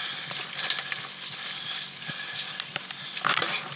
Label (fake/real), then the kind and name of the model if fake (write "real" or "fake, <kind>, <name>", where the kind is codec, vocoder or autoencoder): real